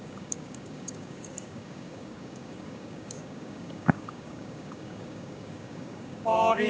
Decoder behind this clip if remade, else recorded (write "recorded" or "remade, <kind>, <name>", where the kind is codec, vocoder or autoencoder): remade, codec, DAC